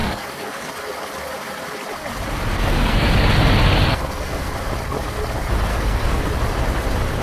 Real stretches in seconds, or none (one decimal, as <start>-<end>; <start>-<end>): 0.7-2.5; 3.1-3.9; 4.5-5.7; 6.2-7.2